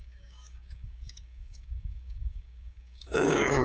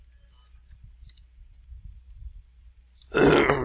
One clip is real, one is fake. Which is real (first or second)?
second